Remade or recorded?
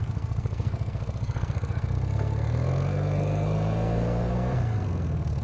remade